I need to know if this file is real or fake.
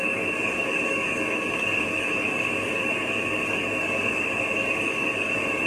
fake